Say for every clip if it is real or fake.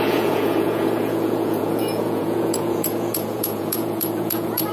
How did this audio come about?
fake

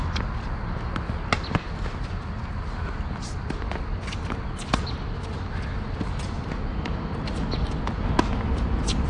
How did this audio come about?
real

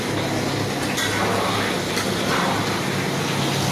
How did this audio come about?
real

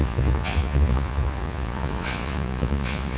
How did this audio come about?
fake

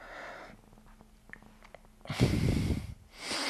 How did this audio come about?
real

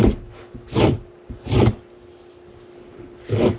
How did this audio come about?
real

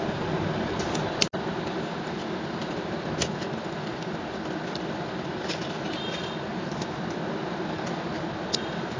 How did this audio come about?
real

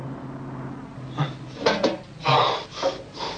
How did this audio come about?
real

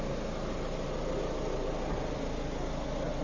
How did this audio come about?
real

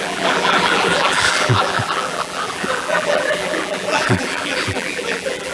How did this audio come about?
fake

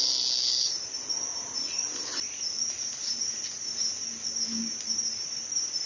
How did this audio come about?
real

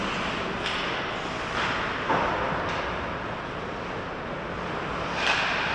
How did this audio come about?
real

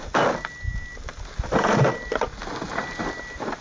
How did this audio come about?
real